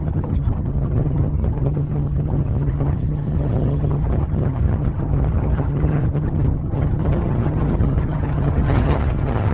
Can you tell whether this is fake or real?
fake